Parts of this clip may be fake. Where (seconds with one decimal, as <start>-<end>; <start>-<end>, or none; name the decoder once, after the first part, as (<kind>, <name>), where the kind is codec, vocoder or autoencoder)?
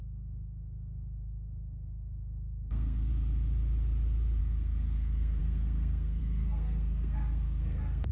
0.0-3.1 (codec, SNAC); 4.4-8.1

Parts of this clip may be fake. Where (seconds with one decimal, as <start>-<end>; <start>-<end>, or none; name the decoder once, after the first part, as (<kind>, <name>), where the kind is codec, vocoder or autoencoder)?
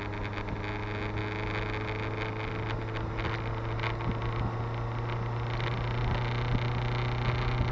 none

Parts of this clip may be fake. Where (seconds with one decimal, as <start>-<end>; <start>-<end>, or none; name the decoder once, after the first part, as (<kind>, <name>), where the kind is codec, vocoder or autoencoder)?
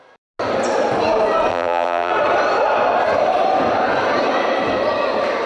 1.5-2.1 (vocoder, BigVGAN v2)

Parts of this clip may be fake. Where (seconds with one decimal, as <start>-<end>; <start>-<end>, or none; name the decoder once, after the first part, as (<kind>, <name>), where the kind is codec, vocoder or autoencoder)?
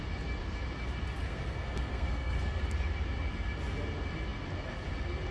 1.2-2.6 (codec, SNAC)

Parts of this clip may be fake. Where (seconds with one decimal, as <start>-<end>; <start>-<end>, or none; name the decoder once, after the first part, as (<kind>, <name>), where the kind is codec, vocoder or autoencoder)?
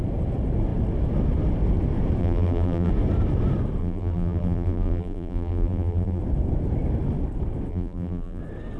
2.2-2.9 (vocoder, BigVGAN v2); 3.8-6.2; 7.7-8.4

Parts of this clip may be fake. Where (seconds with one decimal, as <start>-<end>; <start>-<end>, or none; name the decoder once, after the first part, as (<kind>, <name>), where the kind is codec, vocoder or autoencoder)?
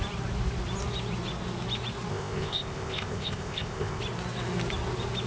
2.1-4.0 (codec, ZipCodec)